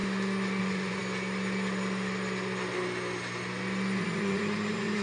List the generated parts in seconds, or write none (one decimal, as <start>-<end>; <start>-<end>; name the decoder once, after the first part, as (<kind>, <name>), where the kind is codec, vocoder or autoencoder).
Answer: 0.6-1.0 (vocoder, Vocos); 4.0-5.0